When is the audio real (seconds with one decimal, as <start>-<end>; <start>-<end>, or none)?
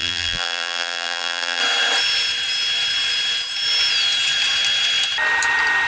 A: 1.6-5.9